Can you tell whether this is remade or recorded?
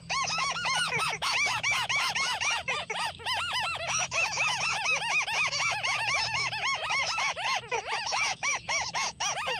remade